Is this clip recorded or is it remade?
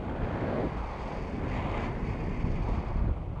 recorded